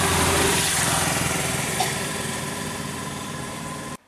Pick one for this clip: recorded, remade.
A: remade